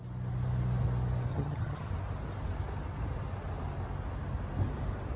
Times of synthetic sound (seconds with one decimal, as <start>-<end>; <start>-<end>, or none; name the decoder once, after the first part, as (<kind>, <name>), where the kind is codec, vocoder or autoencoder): 1.3-1.9 (vocoder, HiFi-GAN)